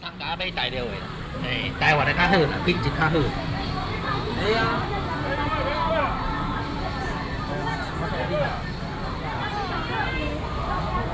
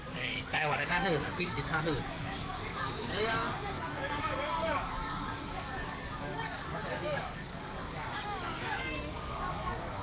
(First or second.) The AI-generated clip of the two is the second